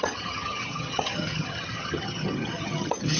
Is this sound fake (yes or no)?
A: yes